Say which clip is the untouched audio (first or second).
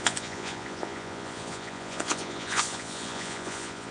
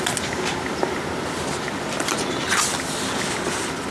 second